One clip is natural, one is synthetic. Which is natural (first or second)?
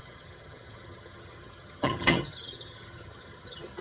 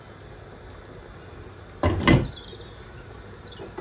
second